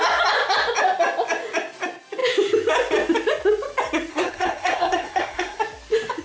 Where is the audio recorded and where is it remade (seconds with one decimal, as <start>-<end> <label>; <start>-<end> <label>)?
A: 0.0-4.1 recorded; 4.1-5.6 remade; 5.6-6.2 recorded